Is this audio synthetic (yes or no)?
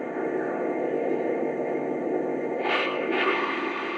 yes